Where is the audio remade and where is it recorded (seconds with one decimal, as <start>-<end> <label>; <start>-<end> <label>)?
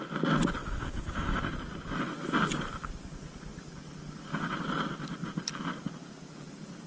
0.0-0.6 recorded; 0.6-1.4 remade; 1.4-6.9 recorded